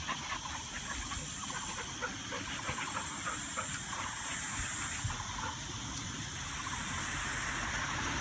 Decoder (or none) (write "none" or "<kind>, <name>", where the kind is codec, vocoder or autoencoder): none